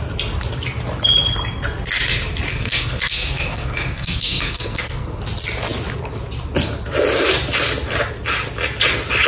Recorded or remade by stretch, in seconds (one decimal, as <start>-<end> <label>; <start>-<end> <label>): 0.0-2.5 recorded; 2.5-5.2 remade; 5.2-9.3 recorded

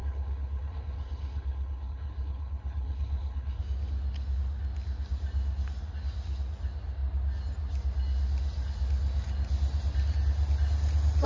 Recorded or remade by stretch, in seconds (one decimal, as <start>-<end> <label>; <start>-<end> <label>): 0.0-3.6 remade; 3.6-11.3 recorded

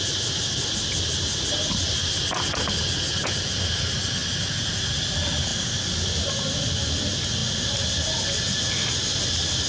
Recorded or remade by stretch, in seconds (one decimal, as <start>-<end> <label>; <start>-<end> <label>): 0.0-9.7 recorded

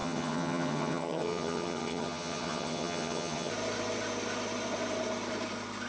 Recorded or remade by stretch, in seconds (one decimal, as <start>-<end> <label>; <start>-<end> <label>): 0.0-3.5 remade; 3.5-5.9 recorded

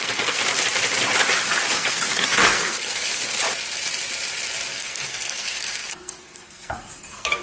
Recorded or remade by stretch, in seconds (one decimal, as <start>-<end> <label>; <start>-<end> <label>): 0.0-0.4 remade; 0.4-1.7 recorded; 1.7-3.2 remade; 3.2-4.7 recorded; 4.7-7.4 remade

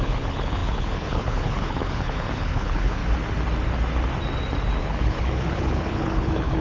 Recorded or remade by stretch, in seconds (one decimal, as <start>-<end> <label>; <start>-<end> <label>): 0.0-3.0 remade; 3.0-4.8 recorded; 4.8-6.6 remade